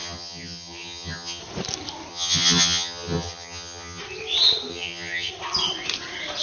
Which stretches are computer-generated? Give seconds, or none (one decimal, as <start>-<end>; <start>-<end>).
0.0-1.4; 2.1-4.0; 4.7-5.3